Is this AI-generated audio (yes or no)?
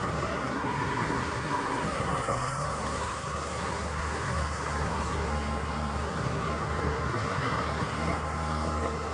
yes